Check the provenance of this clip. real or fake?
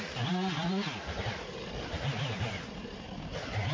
real